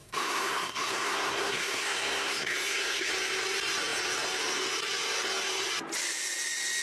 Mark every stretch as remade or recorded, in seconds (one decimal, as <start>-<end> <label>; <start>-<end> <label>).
0.0-3.1 remade; 3.1-6.8 recorded